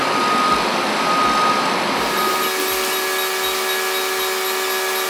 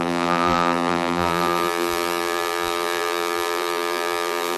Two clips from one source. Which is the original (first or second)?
first